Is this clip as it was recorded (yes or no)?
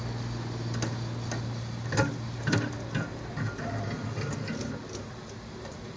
yes